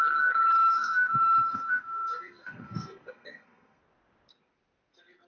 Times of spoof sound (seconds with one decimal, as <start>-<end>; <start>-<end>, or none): 0.6-3.8